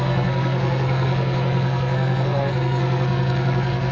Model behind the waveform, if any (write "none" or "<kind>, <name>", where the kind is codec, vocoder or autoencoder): codec, SNAC